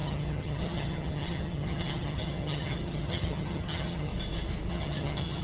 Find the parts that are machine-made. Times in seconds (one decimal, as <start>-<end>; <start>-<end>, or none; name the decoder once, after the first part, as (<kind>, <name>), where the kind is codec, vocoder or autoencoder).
0.0-4.1 (vocoder, HiFi-GAN); 4.7-5.4